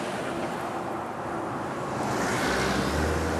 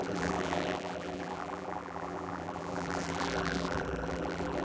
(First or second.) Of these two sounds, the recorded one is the first